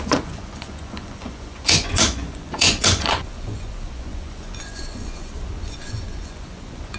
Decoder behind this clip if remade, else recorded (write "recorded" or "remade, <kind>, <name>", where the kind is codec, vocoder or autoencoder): remade, vocoder, Vocos